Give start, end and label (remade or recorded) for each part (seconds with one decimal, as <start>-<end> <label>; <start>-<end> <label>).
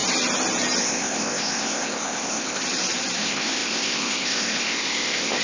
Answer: 0.0-0.8 recorded; 0.8-2.6 remade; 2.6-3.2 recorded; 3.2-5.4 remade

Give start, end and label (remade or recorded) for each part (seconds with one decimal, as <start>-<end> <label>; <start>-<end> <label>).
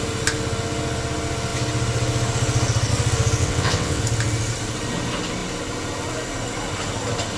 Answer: 0.0-3.4 recorded; 3.4-4.0 remade; 4.0-7.4 recorded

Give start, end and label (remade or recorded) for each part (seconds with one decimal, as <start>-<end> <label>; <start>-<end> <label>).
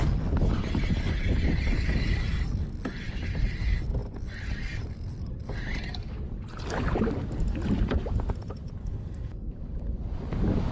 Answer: 0.0-8.8 recorded; 8.8-9.5 remade; 9.5-10.7 recorded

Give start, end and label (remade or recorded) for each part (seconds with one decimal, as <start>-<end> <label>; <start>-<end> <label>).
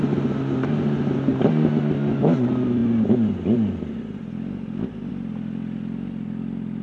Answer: 0.0-6.8 recorded